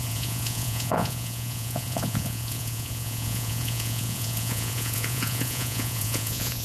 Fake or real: fake